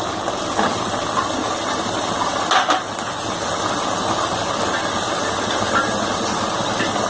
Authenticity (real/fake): real